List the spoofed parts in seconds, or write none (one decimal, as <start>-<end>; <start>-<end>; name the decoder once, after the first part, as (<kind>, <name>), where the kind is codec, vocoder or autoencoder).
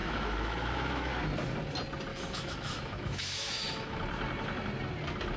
0.0-1.1 (autoencoder, DAC-VAE); 2.1-4.0